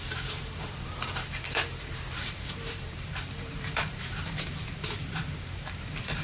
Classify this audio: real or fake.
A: fake